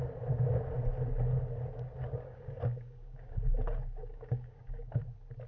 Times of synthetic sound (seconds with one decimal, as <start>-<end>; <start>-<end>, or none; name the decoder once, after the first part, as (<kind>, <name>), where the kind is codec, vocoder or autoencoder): 2.0-3.4 (codec, DAC); 4.0-5.0